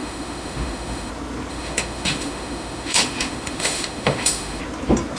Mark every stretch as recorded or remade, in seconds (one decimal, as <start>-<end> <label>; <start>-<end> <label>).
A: 0.0-1.1 remade; 1.1-1.5 recorded; 1.5-4.6 remade; 4.6-5.2 recorded